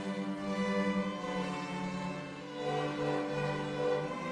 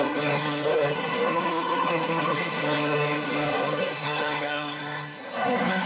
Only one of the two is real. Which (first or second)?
first